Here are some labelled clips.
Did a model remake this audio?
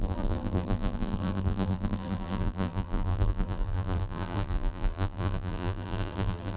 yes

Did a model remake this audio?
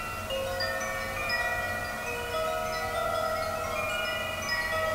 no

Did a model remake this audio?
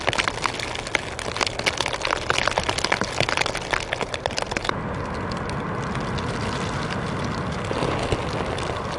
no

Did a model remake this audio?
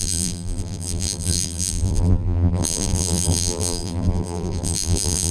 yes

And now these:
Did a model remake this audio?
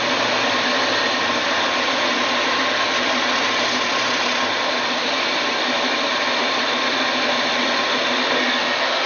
no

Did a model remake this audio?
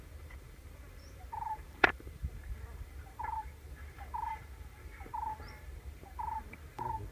yes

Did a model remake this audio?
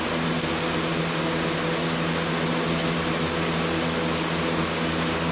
no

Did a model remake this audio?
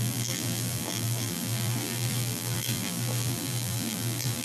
yes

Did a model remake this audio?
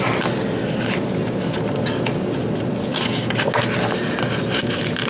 no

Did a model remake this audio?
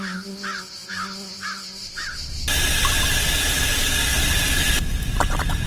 no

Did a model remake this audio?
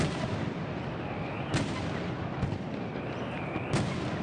no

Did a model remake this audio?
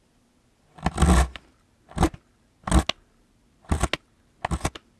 no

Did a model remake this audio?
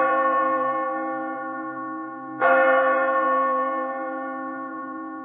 yes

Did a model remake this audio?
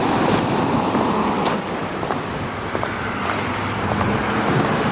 yes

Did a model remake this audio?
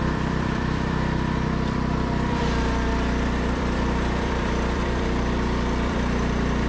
yes